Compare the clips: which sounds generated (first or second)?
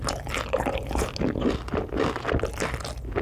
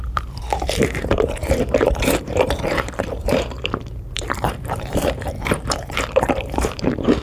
second